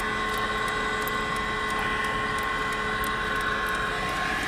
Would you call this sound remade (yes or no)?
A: no